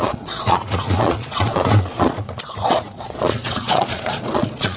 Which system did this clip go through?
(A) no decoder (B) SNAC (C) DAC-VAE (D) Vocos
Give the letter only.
D